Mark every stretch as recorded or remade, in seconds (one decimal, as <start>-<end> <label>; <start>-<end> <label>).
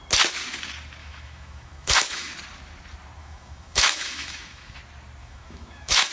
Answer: 0.0-1.0 recorded; 1.0-2.3 remade; 2.3-3.2 recorded; 3.2-4.8 remade; 4.8-5.2 recorded; 5.2-6.1 remade